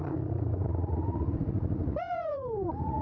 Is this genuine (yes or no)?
no